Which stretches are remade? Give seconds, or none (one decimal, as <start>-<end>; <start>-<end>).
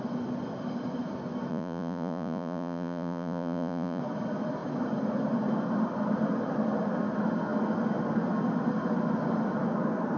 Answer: 1.5-4.0